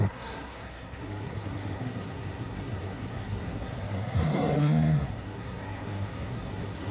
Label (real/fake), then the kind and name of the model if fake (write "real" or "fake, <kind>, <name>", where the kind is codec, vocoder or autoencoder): fake, codec, SNAC